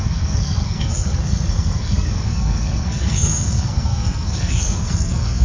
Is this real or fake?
fake